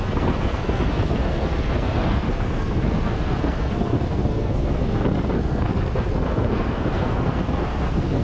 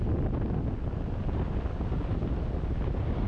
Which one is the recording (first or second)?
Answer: second